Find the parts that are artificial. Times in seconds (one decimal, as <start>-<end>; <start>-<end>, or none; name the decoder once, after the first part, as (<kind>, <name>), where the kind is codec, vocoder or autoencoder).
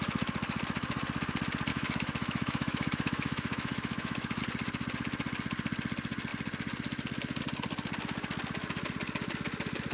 1.7-4.4 (autoencoder, DAC-VAE)